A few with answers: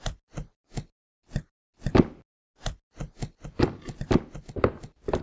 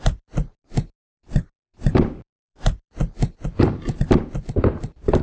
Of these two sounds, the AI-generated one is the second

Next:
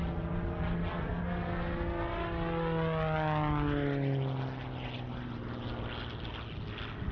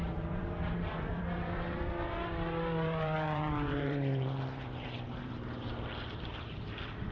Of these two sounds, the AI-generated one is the second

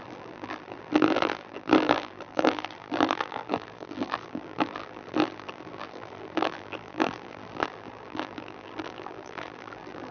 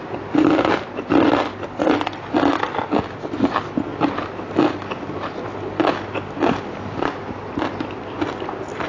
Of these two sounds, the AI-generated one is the first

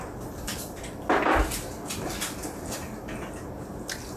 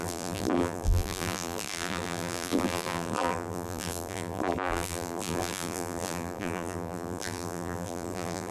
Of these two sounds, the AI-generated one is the second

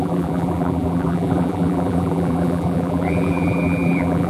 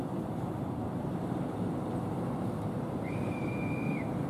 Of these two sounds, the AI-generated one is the first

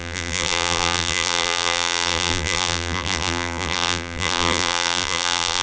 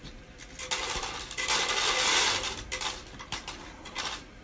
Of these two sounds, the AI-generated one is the first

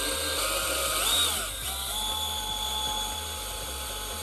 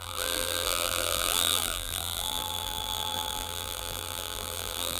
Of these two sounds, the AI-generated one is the second